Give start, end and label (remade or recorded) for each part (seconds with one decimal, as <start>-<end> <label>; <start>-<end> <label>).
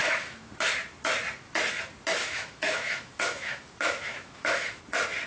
0.0-0.5 remade; 0.5-2.2 recorded; 2.2-4.8 remade; 4.8-5.3 recorded